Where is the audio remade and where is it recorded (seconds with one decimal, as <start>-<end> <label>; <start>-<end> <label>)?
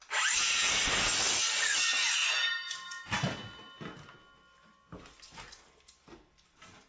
0.0-6.9 recorded